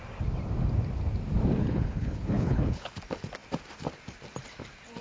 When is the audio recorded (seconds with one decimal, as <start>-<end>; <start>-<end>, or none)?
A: 0.0-1.6; 3.0-5.0